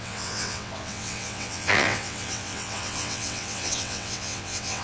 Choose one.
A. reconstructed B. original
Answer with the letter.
A